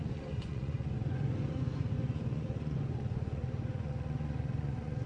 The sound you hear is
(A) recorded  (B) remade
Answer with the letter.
B